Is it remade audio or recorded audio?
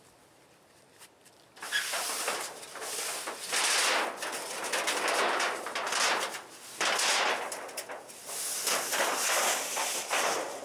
recorded